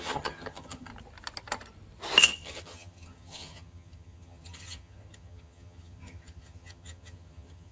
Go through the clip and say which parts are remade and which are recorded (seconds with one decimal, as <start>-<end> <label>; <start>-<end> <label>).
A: 0.0-0.9 remade; 0.9-2.2 recorded; 2.2-7.7 remade